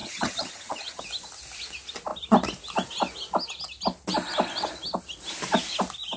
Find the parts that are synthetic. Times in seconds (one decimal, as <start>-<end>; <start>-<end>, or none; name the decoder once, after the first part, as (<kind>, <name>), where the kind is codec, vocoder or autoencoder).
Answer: 0.0-1.0 (vocoder, HiFi-GAN)

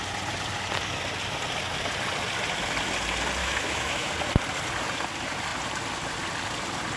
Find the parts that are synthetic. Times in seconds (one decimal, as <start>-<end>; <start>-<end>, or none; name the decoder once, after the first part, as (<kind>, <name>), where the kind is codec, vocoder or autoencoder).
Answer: 3.4-4.1 (autoencoder, DAC-VAE)

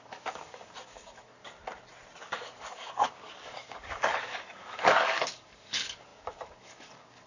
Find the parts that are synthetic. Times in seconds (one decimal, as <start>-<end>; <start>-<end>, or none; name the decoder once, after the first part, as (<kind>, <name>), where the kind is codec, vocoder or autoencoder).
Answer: 0.0-1.4 (codec, DAC); 2.2-7.3

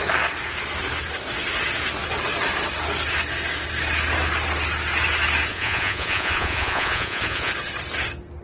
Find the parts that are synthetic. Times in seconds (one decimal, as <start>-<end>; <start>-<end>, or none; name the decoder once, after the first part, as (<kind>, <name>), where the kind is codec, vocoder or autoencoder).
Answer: 5.5-7.5 (vocoder, Vocos)

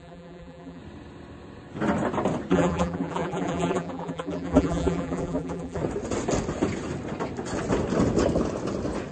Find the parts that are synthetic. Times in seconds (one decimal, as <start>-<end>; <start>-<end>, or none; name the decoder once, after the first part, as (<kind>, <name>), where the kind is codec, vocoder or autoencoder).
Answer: 0.0-0.8 (vocoder, BigVGAN v2); 2.5-5.8

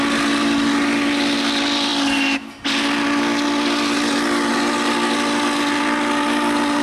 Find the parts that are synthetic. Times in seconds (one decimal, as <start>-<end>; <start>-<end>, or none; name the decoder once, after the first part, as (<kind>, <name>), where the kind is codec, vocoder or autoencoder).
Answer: none

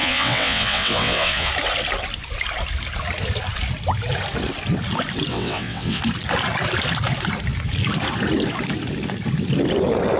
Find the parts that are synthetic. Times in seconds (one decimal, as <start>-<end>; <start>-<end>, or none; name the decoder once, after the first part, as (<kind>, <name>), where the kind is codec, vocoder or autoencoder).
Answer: 0.0-1.5 (vocoder, WaveNeXt); 5.3-6.0

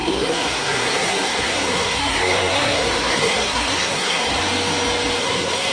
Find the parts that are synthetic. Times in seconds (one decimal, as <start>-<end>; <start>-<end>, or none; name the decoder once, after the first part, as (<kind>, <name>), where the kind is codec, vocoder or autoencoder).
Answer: 0.0-4.3 (codec, SNAC); 5.2-5.7